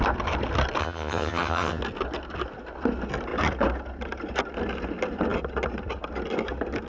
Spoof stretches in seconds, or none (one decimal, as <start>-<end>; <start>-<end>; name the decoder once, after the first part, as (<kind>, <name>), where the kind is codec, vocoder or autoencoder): 0.8-1.8 (vocoder, HiFi-GAN)